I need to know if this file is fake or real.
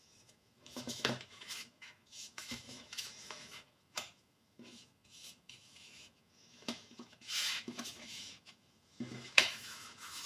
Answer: fake